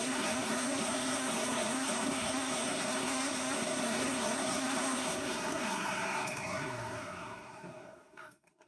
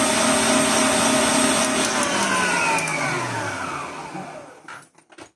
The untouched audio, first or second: second